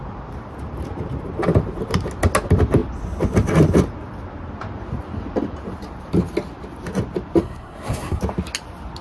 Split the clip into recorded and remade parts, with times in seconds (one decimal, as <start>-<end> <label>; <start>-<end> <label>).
0.0-7.4 recorded; 7.4-8.2 remade; 8.2-9.0 recorded